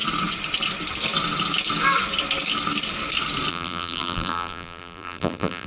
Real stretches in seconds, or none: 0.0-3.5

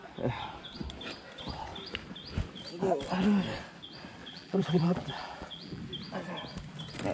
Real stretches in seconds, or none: 0.0-4.2; 5.8-7.1

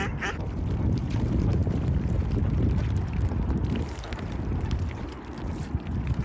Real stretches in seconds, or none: 0.0-6.2